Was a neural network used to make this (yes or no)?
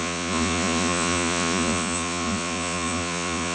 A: yes